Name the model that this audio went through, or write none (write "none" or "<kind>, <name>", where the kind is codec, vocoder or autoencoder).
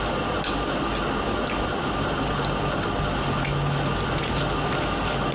none